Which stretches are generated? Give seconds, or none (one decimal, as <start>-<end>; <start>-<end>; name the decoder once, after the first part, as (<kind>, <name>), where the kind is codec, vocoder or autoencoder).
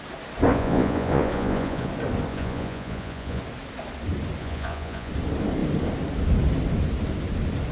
0.5-1.9 (vocoder, Vocos); 2.3-3.4; 4.4-5.1